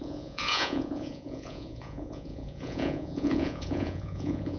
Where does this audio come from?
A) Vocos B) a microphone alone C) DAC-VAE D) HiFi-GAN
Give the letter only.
A